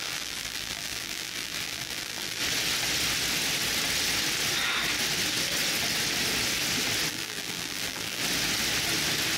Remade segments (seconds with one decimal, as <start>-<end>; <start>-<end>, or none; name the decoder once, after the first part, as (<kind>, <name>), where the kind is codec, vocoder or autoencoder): 0.0-2.4 (vocoder, BigVGAN v2); 7.1-8.2